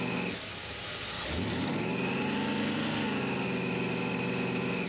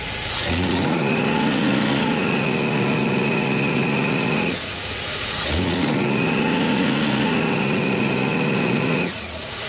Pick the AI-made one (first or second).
second